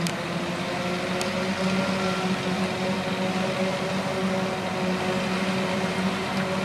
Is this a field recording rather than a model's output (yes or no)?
yes